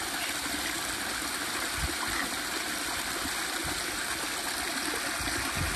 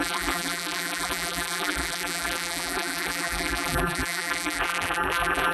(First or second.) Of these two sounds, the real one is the first